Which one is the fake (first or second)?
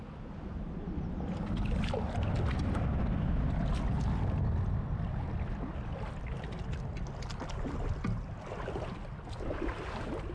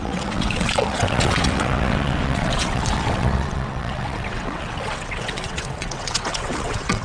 second